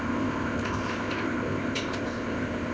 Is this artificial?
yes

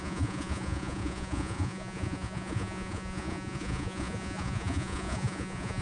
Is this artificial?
yes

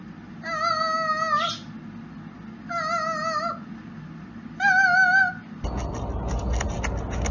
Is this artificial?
no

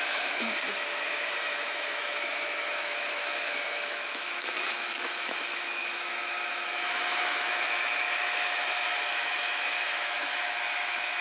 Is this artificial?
yes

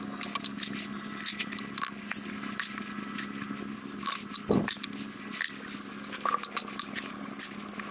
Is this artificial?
no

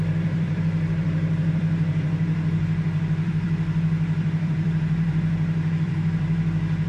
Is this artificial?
yes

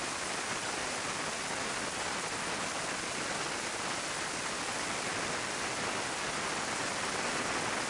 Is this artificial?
no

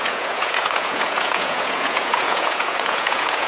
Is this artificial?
yes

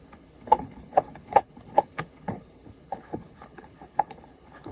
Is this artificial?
yes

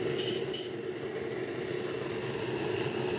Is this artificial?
no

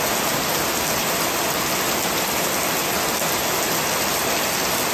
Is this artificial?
no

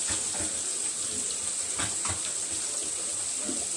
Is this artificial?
no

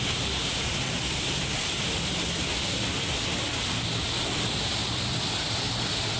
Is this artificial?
no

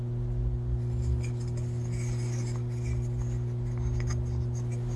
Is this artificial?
no